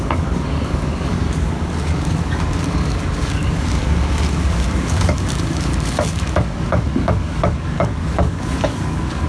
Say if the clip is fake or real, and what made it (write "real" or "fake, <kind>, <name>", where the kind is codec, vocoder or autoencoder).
fake, codec, DAC